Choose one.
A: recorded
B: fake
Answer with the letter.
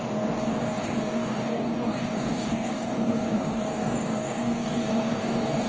B